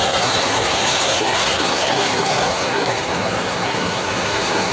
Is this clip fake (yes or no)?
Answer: yes